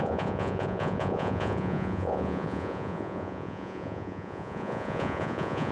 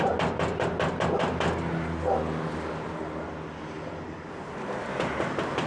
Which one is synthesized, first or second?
first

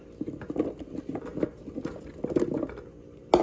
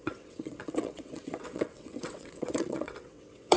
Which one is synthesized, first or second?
second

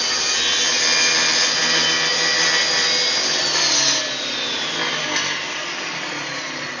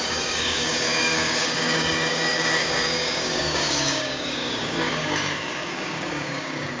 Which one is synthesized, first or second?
second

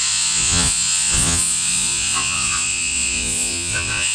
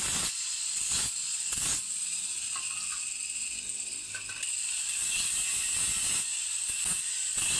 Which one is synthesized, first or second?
first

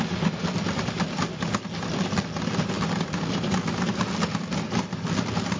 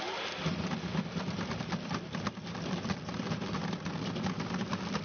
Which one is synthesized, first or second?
second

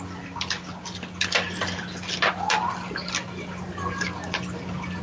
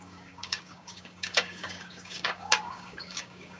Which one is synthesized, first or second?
second